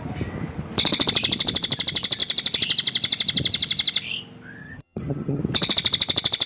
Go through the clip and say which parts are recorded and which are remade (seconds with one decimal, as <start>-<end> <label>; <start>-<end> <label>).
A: 0.0-4.6 recorded; 4.6-5.4 remade; 5.4-6.5 recorded